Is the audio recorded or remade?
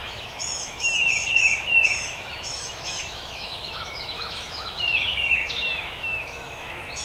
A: remade